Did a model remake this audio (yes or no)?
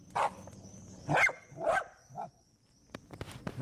no